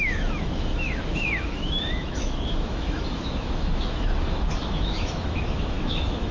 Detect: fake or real fake